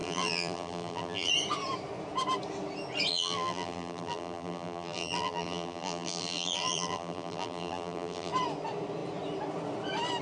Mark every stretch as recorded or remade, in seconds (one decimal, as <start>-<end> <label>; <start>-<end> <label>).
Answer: 0.0-1.3 remade; 1.3-3.1 recorded; 3.1-8.3 remade; 8.3-10.2 recorded